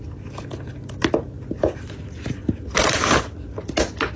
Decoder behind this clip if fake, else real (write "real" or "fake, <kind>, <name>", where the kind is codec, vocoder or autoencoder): real